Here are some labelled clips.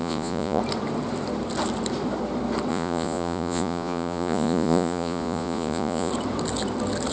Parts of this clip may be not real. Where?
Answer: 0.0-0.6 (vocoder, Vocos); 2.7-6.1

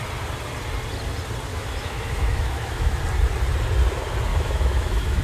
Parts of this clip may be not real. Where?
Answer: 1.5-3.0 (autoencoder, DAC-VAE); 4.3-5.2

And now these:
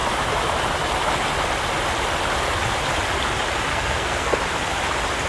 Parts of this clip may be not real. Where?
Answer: 3.7-4.4 (codec, SNAC)

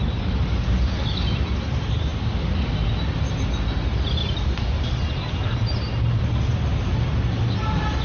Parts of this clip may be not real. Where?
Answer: none

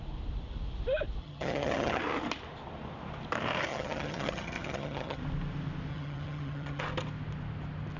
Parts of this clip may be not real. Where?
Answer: 1.2-2.0 (vocoder, HiFi-GAN); 3.7-5.2; 5.9-6.8